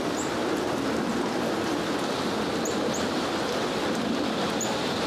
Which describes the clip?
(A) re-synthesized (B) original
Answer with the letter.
B